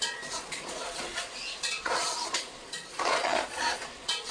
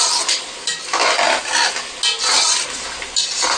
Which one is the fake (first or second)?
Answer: first